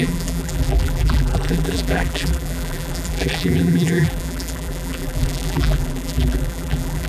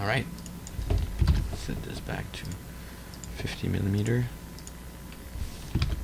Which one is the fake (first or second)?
first